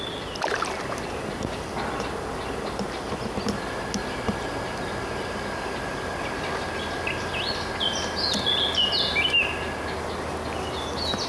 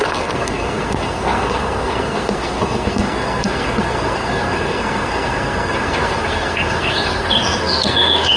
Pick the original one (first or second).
first